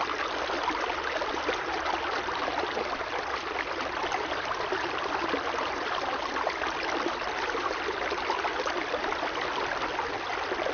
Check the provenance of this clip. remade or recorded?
recorded